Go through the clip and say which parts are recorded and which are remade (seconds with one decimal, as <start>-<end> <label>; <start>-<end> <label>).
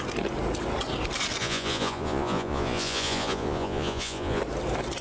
0.0-1.4 recorded; 1.4-4.4 remade; 4.4-5.0 recorded